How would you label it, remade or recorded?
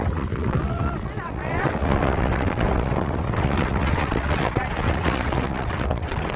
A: remade